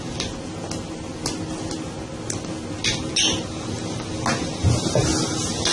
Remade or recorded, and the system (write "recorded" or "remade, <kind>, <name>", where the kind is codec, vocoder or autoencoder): recorded